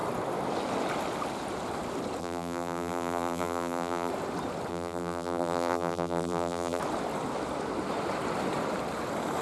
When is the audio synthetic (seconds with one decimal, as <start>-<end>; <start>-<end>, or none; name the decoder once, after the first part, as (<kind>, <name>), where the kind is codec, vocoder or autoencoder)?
2.2-4.1 (vocoder, BigVGAN v2); 4.7-6.8